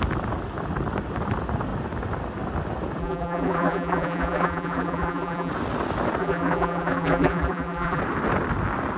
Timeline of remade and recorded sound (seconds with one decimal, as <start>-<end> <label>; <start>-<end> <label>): 0.0-3.0 recorded; 3.0-5.5 remade; 5.5-6.2 recorded; 6.2-8.0 remade; 8.0-9.0 recorded

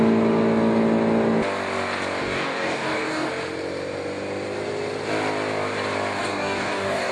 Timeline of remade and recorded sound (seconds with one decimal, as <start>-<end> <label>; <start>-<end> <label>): 0.0-2.2 recorded; 2.2-3.3 remade; 3.3-6.2 recorded; 6.2-7.1 remade

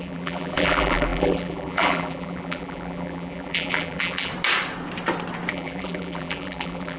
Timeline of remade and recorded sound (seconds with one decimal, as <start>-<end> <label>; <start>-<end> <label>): 0.0-4.3 remade; 4.3-5.5 recorded; 5.5-7.0 remade

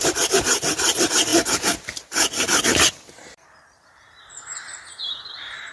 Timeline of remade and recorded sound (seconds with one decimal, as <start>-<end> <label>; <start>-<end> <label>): 0.0-5.7 remade

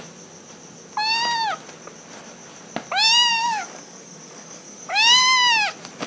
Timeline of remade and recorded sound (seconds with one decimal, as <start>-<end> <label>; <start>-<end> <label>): 0.0-3.3 recorded; 3.3-5.2 remade; 5.2-6.1 recorded